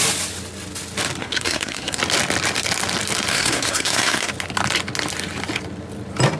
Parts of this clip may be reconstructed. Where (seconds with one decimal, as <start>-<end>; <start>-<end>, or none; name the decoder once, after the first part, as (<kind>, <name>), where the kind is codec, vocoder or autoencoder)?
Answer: 1.2-2.0 (codec, SNAC); 3.3-4.3